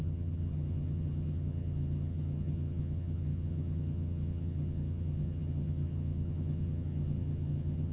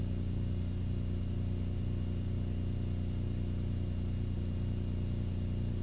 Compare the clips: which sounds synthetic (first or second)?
first